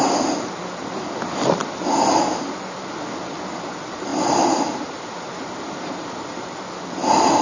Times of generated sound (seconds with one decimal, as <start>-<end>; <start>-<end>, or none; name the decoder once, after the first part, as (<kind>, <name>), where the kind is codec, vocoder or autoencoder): none